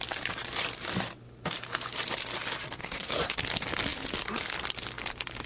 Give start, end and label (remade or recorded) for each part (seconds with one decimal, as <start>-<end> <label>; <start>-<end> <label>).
0.0-2.8 recorded; 2.8-3.4 remade; 3.4-5.5 recorded